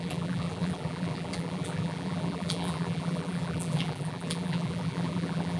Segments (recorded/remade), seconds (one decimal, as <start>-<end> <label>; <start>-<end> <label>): 0.0-5.6 remade